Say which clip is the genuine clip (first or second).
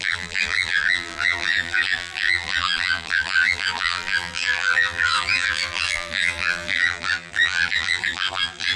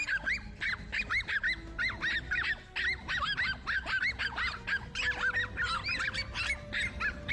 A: second